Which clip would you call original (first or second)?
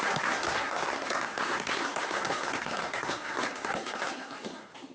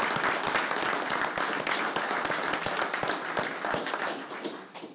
second